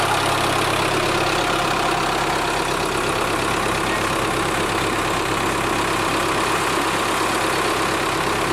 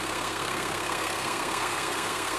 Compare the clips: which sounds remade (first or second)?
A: second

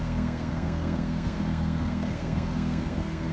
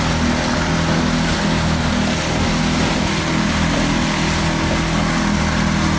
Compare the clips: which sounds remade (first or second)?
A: first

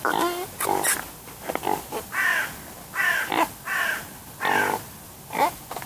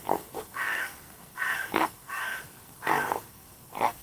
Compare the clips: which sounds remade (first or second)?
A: second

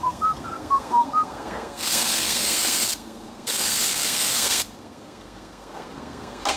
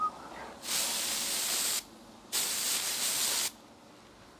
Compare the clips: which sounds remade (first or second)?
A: first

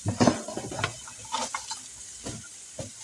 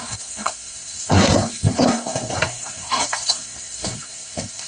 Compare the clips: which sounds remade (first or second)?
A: second